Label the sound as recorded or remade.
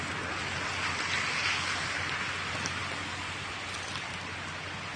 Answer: recorded